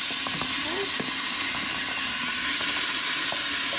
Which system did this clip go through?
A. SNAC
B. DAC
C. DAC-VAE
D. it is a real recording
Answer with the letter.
D